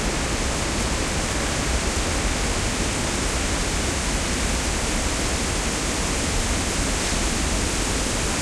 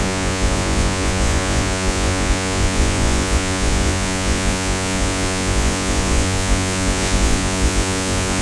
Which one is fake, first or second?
second